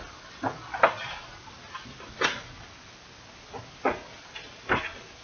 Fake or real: real